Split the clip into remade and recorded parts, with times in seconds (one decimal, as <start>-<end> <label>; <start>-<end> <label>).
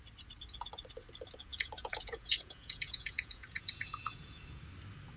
0.0-1.5 recorded; 1.5-4.6 remade; 4.6-5.2 recorded